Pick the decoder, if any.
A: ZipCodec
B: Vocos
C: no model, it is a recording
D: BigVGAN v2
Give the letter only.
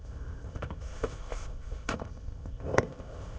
A